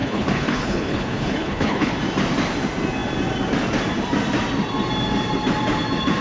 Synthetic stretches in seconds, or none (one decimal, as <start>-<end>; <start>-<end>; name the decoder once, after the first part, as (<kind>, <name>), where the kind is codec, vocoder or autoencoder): 0.0-1.9 (codec, HILCodec)